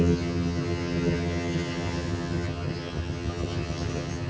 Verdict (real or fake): fake